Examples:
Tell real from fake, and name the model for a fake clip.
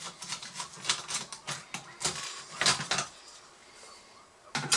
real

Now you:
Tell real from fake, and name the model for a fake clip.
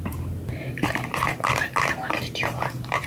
fake, vocoder, BigVGAN v2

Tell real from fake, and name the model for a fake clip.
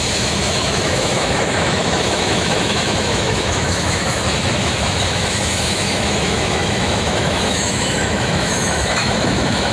fake, autoencoder, DAC-VAE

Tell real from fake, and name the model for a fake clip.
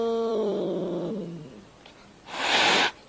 fake, vocoder, BigVGAN v2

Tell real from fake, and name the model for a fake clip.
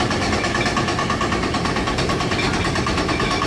real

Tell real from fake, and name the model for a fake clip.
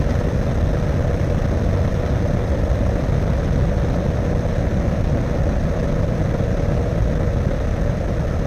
real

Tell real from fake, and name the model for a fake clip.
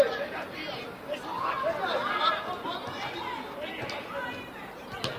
real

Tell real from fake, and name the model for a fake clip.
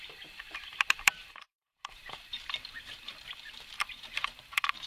fake, vocoder, BigVGAN v2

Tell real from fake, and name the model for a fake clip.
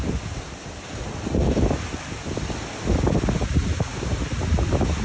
real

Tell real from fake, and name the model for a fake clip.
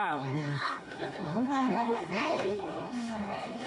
fake, codec, SNAC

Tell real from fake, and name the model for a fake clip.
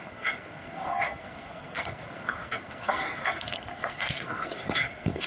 fake, codec, SNAC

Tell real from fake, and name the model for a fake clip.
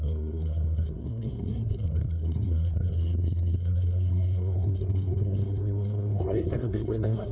fake, codec, SNAC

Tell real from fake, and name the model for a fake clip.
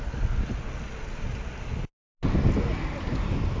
real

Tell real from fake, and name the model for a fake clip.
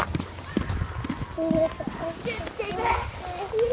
real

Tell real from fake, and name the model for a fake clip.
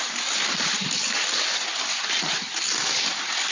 real